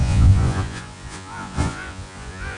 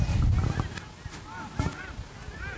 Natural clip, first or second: second